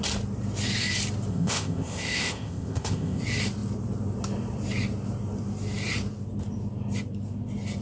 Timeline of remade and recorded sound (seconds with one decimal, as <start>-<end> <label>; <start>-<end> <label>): 0.0-1.3 recorded; 1.3-3.2 remade; 3.2-7.8 recorded

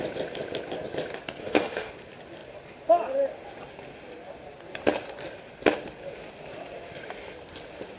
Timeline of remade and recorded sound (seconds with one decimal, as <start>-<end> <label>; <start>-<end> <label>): 0.0-1.4 recorded; 1.4-1.9 remade; 1.9-8.0 recorded

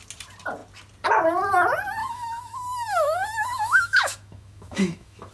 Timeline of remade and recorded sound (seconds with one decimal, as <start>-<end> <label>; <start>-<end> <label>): 0.0-2.0 recorded; 2.0-5.3 remade

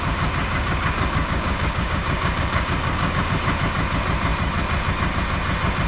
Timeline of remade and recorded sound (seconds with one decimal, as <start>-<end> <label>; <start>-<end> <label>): 0.0-0.4 recorded; 0.4-3.3 remade; 3.3-5.9 recorded

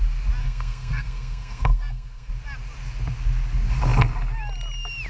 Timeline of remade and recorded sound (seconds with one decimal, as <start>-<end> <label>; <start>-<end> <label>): 0.0-0.4 recorded; 0.4-2.3 remade; 2.3-5.1 recorded